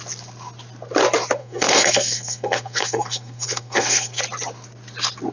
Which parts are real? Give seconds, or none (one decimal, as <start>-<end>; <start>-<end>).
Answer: 0.0-1.4; 4.2-5.3